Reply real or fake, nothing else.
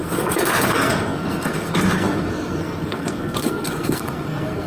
fake